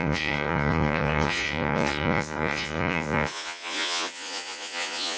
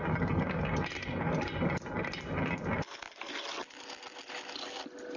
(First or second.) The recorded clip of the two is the second